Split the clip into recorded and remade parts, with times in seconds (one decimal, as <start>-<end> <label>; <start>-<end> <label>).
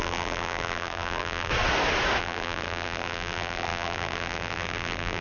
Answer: 0.0-1.5 remade; 1.5-2.2 recorded; 2.2-5.2 remade